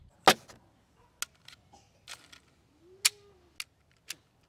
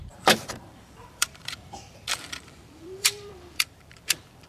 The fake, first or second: second